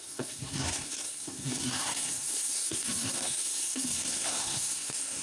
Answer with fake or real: fake